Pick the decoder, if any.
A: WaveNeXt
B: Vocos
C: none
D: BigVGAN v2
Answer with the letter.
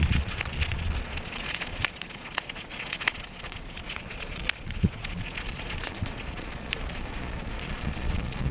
B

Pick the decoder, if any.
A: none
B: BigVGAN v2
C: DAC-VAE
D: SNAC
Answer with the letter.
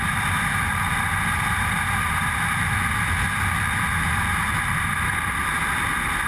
A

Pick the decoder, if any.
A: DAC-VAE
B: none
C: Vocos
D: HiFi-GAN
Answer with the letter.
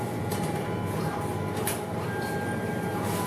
B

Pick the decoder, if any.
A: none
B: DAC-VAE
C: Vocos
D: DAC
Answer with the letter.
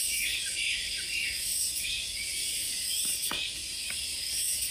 D